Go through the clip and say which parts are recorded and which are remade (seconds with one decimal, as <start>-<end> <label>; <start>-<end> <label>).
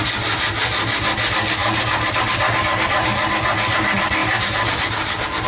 0.0-5.5 recorded